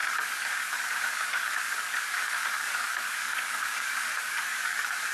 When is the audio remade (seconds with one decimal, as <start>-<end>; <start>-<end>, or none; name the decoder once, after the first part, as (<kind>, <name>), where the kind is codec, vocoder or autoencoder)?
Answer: 0.0-5.1 (codec, DAC)